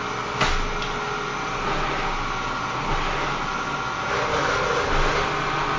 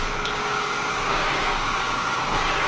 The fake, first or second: second